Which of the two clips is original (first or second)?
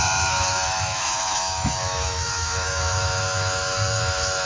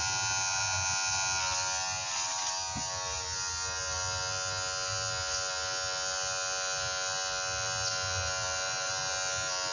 second